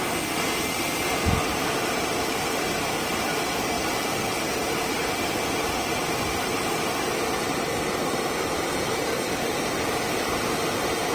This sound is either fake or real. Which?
real